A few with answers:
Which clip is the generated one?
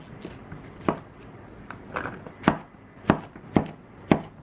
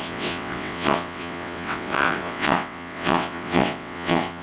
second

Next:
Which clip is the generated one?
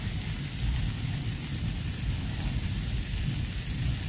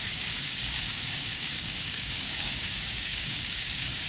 second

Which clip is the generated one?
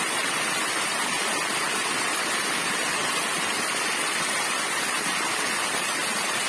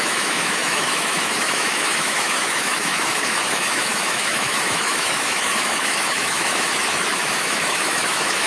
second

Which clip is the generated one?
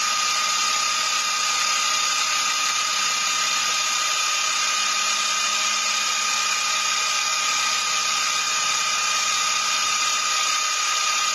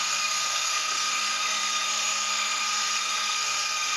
second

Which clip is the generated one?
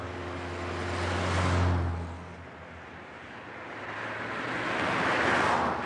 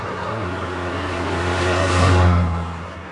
second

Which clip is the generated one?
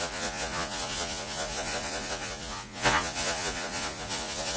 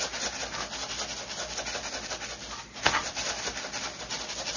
first